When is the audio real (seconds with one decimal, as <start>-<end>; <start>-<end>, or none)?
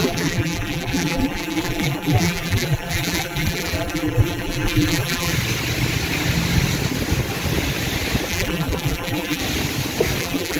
5.3-8.3; 9.4-10.2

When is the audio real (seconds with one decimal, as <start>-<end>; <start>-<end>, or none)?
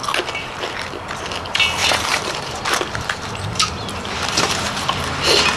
0.0-1.8; 5.1-5.6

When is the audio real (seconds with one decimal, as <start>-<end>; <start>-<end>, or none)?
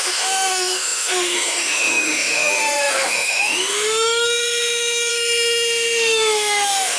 none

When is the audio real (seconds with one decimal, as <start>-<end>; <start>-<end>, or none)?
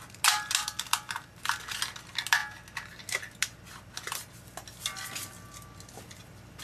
0.0-6.6